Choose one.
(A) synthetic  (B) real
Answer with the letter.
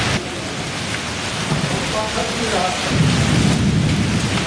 B